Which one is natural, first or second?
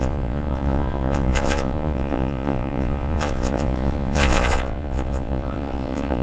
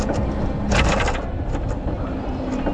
second